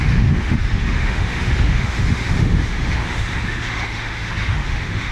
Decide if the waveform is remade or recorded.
remade